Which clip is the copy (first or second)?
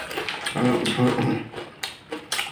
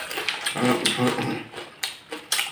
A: second